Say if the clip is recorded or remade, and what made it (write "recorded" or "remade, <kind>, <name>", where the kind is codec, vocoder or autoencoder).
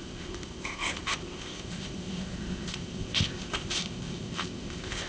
remade, codec, ZipCodec